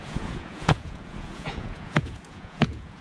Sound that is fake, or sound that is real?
fake